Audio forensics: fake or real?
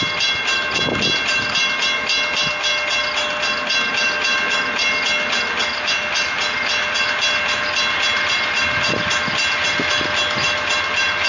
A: real